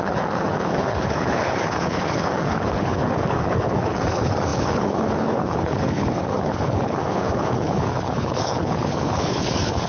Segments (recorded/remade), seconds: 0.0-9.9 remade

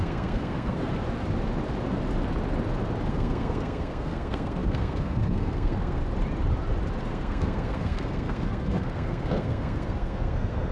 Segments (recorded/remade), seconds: 0.0-0.9 remade; 0.9-3.1 recorded; 3.1-6.0 remade; 6.0-7.0 recorded; 7.0-10.7 remade

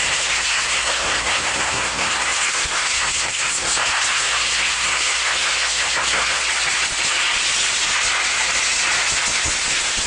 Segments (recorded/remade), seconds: 0.0-6.4 remade; 6.4-9.7 recorded; 9.7-10.1 remade

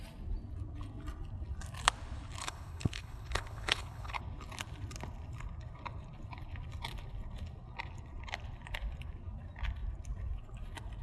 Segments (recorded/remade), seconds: 0.0-2.4 recorded; 2.4-4.2 remade; 4.2-11.0 recorded